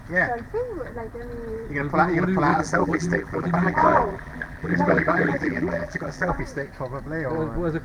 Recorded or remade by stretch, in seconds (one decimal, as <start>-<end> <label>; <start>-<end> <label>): 0.0-2.5 recorded; 2.5-6.4 remade; 6.4-7.8 recorded